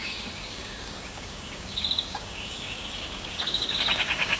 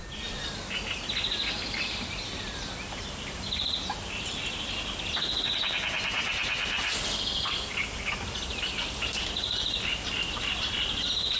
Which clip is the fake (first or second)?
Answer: first